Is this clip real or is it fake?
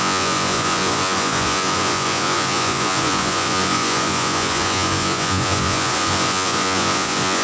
fake